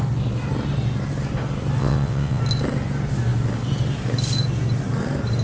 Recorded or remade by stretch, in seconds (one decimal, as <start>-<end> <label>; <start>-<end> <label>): 0.0-1.8 recorded; 1.8-2.4 remade; 2.4-5.4 recorded